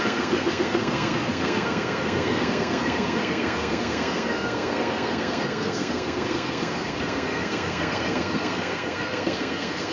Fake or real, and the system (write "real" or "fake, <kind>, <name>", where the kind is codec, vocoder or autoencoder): fake, codec, SNAC